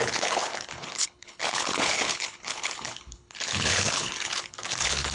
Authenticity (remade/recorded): remade